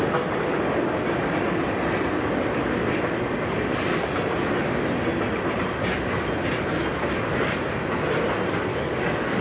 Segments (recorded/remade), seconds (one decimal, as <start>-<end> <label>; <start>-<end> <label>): 0.0-8.7 recorded; 8.7-9.4 remade